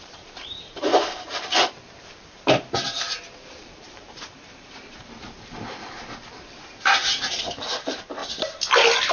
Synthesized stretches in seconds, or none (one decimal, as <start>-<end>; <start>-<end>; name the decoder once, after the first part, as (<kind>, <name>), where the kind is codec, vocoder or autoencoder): 0.0-8.2 (vocoder, BigVGAN v2)